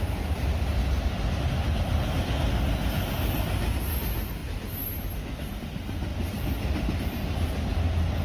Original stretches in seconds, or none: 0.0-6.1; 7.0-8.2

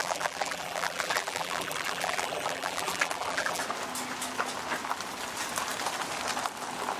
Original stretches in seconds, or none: 3.6-7.0

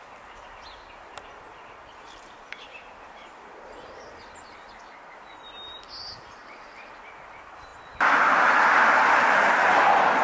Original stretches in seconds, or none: 0.0-10.2

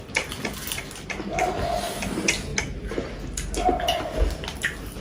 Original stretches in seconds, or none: 0.0-5.0

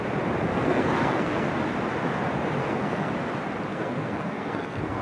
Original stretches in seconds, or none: 0.0-0.5; 1.5-2.6; 3.1-3.7